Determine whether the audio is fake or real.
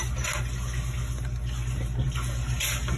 real